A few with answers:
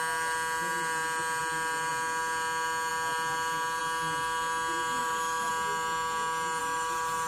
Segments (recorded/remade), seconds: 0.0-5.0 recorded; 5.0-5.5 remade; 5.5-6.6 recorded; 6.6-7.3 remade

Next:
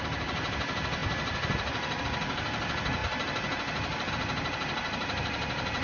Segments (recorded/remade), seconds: 0.0-5.8 recorded

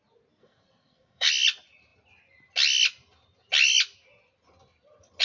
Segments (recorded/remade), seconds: 0.0-0.4 recorded; 0.4-1.3 remade; 1.3-5.2 recorded

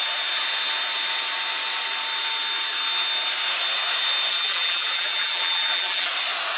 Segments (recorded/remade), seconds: 0.0-4.3 recorded; 4.3-6.1 remade; 6.1-6.6 recorded

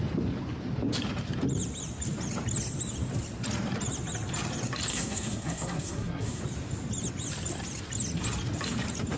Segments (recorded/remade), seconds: 0.0-4.9 recorded; 4.9-6.4 remade; 6.4-9.2 recorded

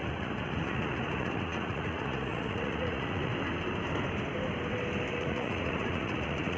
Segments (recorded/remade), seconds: 0.0-3.3 remade; 3.3-5.1 recorded; 5.1-6.6 remade

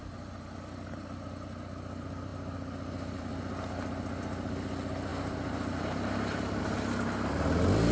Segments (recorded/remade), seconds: 0.0-5.1 recorded; 5.1-6.6 remade; 6.6-7.9 recorded

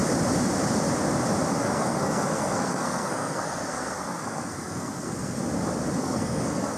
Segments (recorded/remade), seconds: 0.0-1.6 recorded; 1.6-5.4 remade; 5.4-6.0 recorded; 6.0-6.8 remade